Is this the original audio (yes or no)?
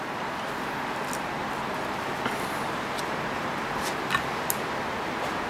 yes